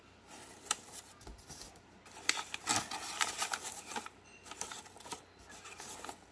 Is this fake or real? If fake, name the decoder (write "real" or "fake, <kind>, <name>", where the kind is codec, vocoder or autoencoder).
real